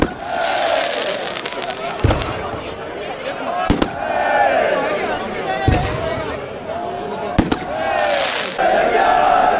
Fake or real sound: real